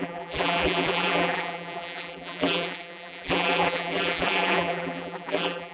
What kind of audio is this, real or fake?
fake